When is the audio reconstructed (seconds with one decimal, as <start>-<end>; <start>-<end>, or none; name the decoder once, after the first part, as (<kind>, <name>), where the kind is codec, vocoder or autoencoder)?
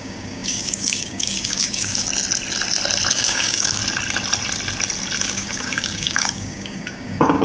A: 0.0-2.1 (codec, DAC); 3.1-3.8; 5.2-7.4